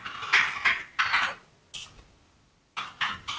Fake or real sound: real